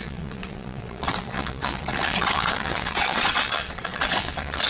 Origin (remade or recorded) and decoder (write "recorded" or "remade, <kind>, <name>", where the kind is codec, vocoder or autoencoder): remade, vocoder, WaveNeXt